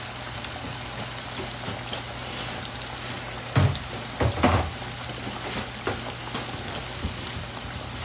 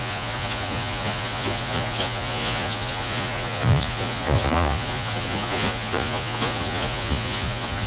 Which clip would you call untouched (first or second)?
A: first